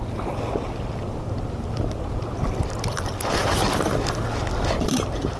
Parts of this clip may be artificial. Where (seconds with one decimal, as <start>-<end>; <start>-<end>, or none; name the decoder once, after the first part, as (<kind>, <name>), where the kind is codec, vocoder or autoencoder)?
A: none